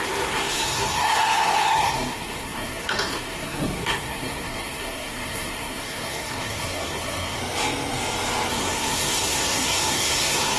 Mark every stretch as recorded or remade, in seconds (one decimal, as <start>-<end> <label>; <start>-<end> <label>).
0.0-7.4 remade; 7.4-8.5 recorded; 8.5-10.6 remade